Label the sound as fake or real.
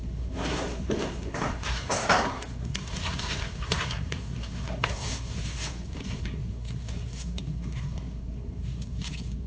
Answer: fake